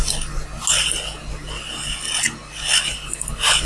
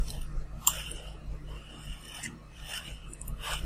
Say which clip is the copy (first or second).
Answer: second